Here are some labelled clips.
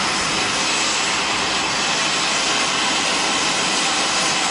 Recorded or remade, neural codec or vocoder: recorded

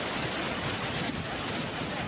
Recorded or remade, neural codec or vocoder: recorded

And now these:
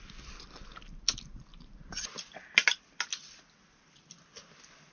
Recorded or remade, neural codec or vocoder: recorded